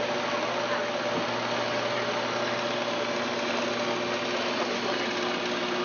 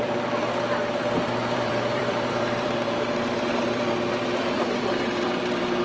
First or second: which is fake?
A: second